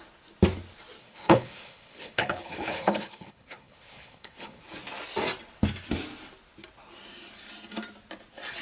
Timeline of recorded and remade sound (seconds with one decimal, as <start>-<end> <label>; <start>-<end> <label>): 0.0-1.0 recorded; 1.0-4.6 remade; 4.6-8.6 recorded